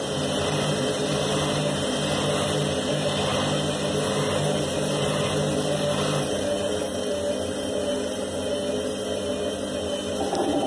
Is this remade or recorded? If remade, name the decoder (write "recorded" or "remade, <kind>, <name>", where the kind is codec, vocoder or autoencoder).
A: recorded